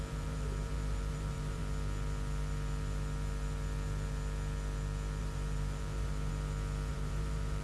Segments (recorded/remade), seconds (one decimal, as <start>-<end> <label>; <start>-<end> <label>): 0.0-1.6 remade; 1.6-5.2 recorded; 5.2-6.3 remade; 6.3-6.9 recorded; 6.9-7.6 remade